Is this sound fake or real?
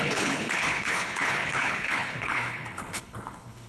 fake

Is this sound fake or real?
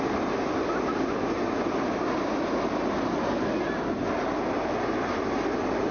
real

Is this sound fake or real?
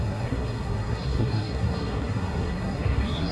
fake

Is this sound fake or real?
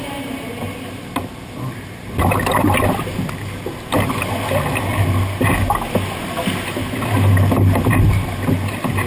real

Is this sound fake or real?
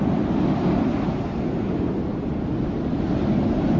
real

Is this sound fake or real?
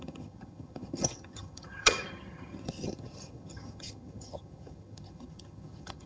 fake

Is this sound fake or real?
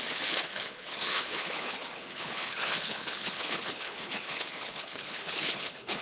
fake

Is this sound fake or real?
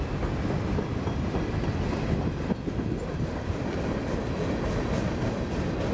real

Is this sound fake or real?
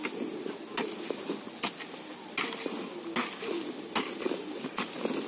real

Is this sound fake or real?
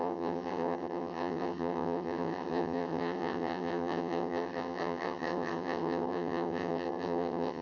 fake